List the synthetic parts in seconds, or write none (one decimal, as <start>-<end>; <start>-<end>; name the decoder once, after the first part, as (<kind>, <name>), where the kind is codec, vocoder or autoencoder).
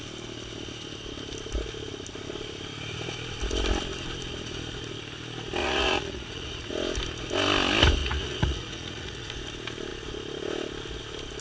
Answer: 5.6-6.7 (vocoder, Vocos); 8.0-9.3